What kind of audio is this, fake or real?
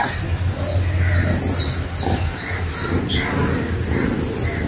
real